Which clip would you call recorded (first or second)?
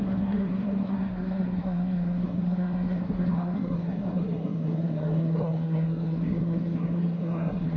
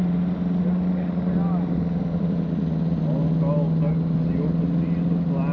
second